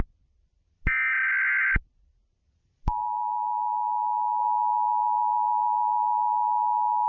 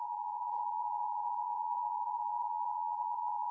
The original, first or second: first